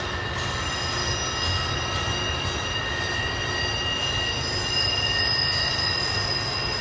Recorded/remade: recorded